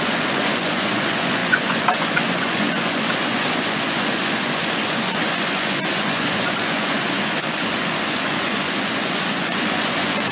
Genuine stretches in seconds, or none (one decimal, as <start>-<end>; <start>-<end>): none